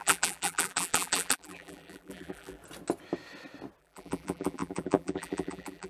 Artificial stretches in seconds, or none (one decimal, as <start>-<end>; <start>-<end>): 0.0-2.6; 3.8-5.9